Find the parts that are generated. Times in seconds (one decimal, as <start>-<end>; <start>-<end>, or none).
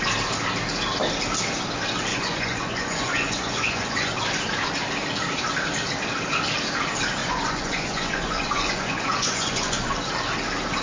2.1-4.1; 7.2-9.9